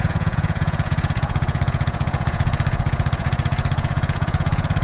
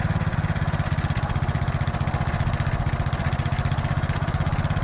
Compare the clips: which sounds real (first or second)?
second